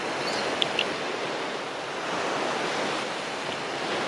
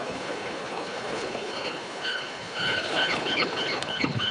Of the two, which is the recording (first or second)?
first